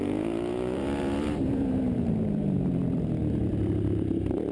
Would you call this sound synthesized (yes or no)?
yes